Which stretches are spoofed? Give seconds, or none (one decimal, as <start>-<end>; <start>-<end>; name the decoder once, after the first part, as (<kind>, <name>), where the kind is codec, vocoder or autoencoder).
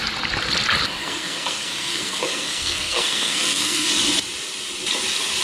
1.0-3.9 (codec, SNAC)